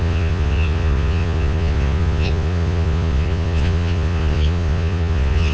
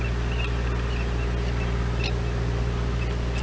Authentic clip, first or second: second